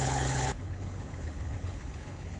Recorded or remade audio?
remade